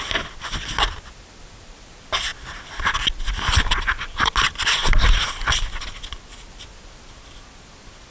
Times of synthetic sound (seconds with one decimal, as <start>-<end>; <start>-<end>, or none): none